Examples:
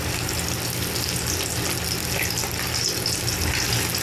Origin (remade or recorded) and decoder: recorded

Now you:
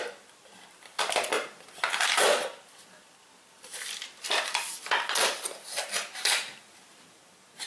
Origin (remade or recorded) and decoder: remade, vocoder, BigVGAN v2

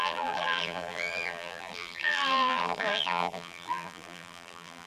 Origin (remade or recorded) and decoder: remade, vocoder, BigVGAN v2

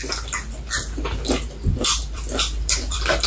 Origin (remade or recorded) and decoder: remade, vocoder, BigVGAN v2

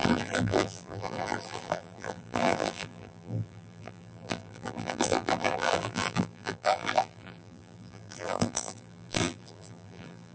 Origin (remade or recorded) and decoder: remade, vocoder, BigVGAN v2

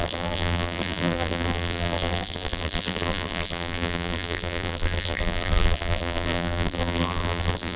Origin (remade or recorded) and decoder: remade, vocoder, BigVGAN v2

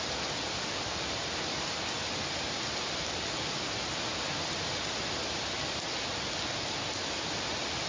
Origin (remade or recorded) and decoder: recorded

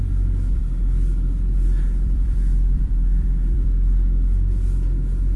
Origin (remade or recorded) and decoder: remade, vocoder, BigVGAN v2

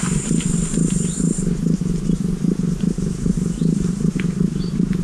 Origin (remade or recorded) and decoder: remade, vocoder, BigVGAN v2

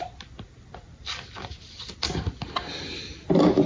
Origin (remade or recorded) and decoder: remade, vocoder, BigVGAN v2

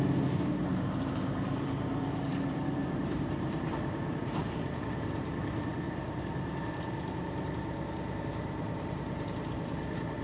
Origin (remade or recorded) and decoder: remade, vocoder, BigVGAN v2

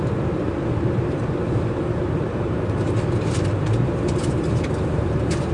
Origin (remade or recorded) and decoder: remade, vocoder, BigVGAN v2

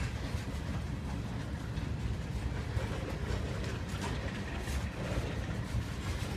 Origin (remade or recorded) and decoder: recorded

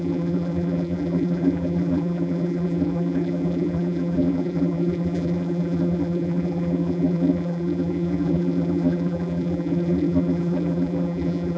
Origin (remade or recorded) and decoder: remade, vocoder, BigVGAN v2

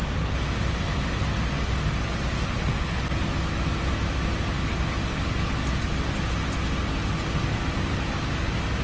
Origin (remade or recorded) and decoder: recorded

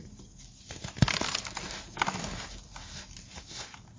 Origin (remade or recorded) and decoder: recorded